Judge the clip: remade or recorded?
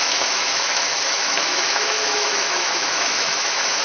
remade